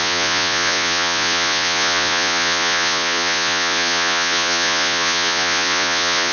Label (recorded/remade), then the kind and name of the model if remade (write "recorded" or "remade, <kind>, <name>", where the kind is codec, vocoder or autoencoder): remade, vocoder, Vocos